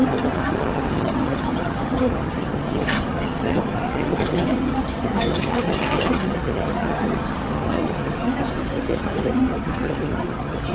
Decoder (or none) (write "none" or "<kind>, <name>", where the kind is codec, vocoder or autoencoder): vocoder, HiFi-GAN